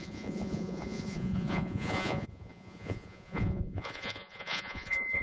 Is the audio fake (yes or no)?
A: yes